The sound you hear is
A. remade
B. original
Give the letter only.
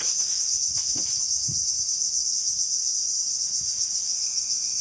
A